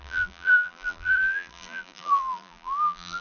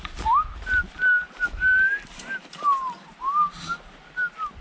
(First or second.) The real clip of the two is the second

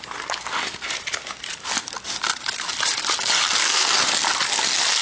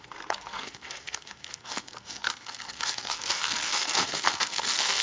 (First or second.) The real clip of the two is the first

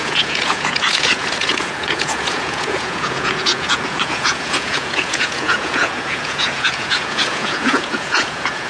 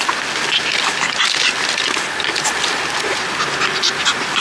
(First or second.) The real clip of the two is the second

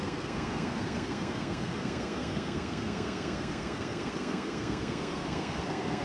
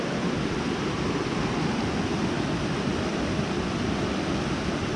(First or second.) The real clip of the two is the second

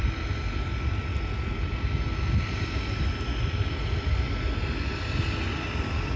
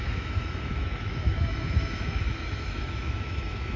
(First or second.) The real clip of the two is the first